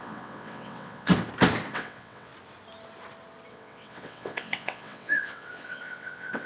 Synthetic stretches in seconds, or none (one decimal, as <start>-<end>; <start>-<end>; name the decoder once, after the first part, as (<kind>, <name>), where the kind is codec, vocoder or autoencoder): 0.0-1.1 (vocoder, WaveNeXt); 1.7-2.3; 3.5-6.5